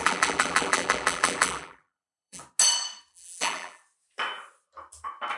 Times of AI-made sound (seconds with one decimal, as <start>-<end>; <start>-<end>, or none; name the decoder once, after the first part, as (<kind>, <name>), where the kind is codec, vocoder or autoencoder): 0.0-2.4 (vocoder, BigVGAN v2); 3.1-3.8